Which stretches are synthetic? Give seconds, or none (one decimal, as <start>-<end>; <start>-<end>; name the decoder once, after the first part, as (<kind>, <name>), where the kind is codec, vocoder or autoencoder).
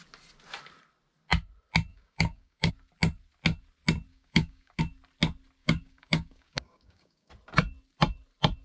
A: 1.9-2.7 (codec, DAC); 4.1-4.8; 5.6-7.3